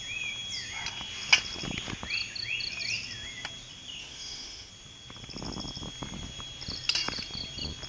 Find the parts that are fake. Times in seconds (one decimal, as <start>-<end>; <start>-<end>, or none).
4.0-4.7